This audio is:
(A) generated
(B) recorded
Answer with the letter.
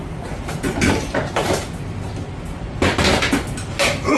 B